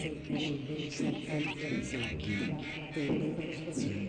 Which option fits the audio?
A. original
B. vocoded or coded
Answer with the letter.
A